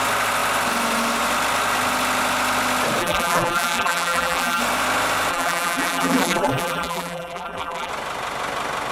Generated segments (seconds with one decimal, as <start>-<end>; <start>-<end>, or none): 3.0-4.6; 5.3-7.9